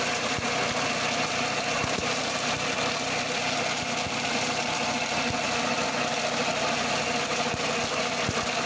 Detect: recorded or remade recorded